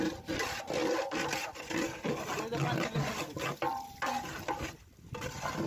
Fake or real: real